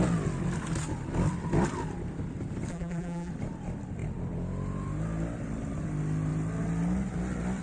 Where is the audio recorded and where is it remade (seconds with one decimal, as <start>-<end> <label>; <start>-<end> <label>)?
0.0-2.7 recorded; 2.7-3.3 remade; 3.3-7.6 recorded